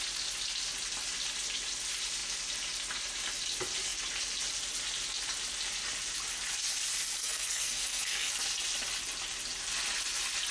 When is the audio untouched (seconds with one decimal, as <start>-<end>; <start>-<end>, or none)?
0.0-7.2; 8.3-10.5